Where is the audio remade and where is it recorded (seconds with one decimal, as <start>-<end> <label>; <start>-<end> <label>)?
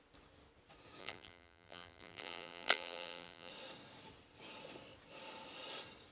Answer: 0.0-1.0 recorded; 1.0-3.5 remade; 3.5-6.1 recorded